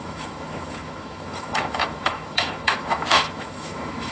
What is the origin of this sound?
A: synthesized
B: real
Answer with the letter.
A